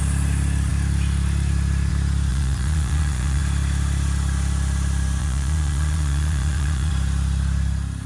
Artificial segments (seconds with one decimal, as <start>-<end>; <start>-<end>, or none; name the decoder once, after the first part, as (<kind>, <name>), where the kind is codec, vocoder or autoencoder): 2.3-3.4 (vocoder, Vocos); 5.2-6.9